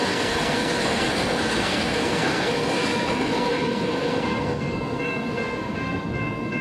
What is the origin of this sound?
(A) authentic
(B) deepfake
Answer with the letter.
B